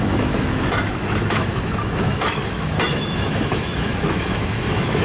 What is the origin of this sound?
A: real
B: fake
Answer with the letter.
B